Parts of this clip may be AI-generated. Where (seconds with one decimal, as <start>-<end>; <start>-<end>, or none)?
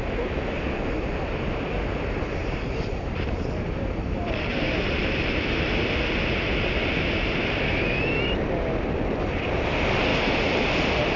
2.4-5.0; 10.1-10.7